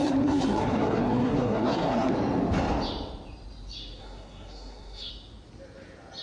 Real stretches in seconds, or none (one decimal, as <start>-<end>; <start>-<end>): 2.1-4.0; 5.1-6.2

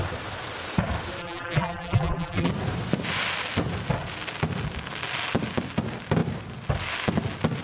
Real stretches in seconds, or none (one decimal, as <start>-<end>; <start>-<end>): 0.0-1.2; 2.5-7.6

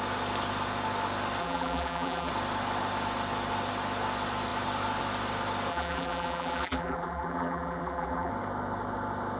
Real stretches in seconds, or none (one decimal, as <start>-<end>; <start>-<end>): 0.0-1.4; 2.3-5.7; 8.3-9.4

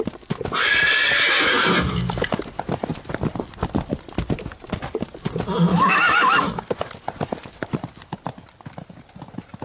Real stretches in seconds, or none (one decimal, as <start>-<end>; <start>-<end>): 0.0-5.7; 6.5-9.6

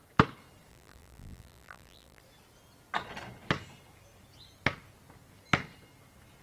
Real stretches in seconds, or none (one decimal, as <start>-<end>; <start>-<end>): 0.0-0.7; 2.2-6.4

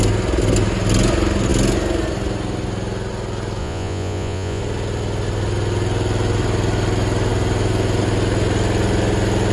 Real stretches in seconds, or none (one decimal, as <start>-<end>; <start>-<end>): 0.0-3.6; 4.6-9.5